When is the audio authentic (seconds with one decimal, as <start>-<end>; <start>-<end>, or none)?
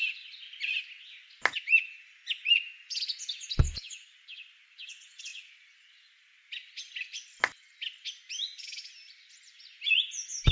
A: 0.0-10.5